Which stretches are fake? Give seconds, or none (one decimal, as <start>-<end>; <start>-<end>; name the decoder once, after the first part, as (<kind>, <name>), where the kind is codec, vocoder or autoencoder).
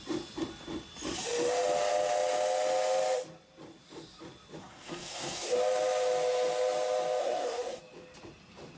4.6-5.6 (codec, SNAC); 7.2-7.8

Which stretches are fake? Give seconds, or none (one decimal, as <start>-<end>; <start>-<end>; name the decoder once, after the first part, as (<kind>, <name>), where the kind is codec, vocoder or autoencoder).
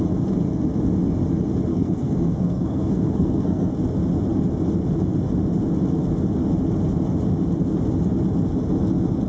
1.7-3.7 (codec, SNAC)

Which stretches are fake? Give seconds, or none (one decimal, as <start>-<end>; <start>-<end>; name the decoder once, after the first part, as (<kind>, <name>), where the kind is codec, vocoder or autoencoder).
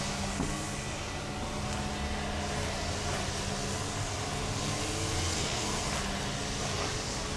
5.3-5.9 (codec, SNAC)